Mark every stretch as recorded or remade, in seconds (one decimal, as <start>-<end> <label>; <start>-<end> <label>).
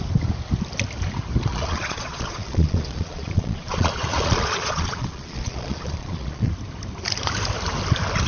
0.0-1.5 recorded; 1.5-6.5 remade; 6.5-8.3 recorded